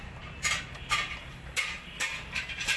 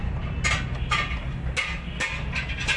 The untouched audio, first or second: second